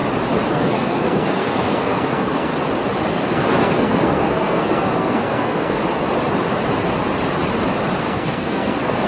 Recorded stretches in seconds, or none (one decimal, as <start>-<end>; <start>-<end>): 0.0-0.5; 2.5-3.1; 5.8-8.0